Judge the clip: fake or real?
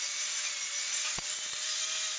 fake